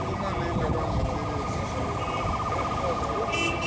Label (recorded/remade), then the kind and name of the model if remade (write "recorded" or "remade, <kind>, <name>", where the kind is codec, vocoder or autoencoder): recorded